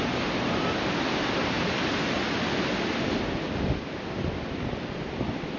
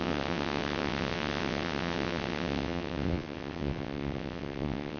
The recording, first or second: first